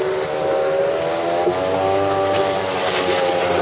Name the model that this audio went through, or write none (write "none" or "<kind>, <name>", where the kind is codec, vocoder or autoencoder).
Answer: none